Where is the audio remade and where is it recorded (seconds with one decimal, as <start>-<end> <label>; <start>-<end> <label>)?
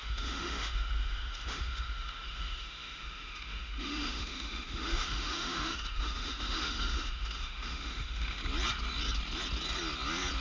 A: 0.0-8.4 remade; 8.4-10.4 recorded